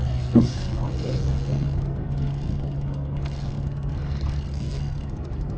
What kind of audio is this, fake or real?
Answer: fake